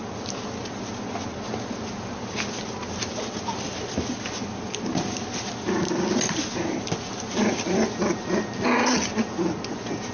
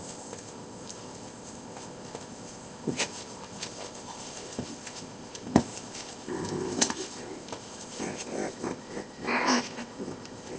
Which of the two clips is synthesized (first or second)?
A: second